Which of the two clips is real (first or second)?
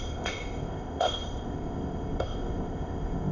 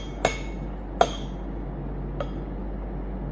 second